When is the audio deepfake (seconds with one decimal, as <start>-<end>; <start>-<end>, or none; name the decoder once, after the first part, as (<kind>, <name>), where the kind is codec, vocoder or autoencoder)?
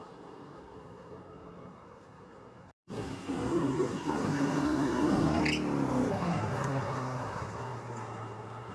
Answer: 0.0-5.4 (codec, SNAC); 6.1-8.7